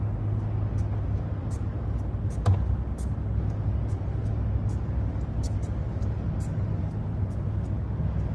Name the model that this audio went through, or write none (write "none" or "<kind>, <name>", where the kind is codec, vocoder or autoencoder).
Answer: none